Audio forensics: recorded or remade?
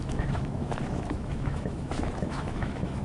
remade